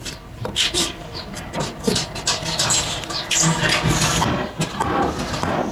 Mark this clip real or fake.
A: real